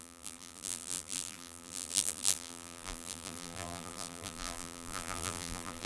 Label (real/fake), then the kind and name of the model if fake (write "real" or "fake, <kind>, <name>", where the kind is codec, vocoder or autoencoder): fake, vocoder, BigVGAN v2